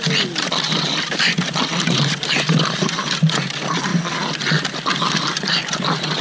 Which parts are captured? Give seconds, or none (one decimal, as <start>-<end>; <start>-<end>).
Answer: 0.0-6.2